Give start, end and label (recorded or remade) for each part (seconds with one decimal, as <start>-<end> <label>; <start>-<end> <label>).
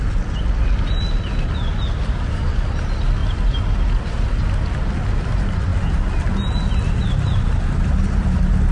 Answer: 0.0-8.7 recorded